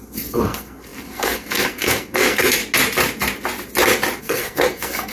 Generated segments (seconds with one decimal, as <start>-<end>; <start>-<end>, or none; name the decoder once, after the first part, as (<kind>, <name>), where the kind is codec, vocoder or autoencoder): 0.0-2.6 (codec, SNAC); 4.2-5.1